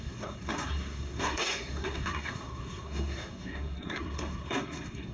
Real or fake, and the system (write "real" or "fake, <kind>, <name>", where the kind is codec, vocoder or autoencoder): fake, codec, SNAC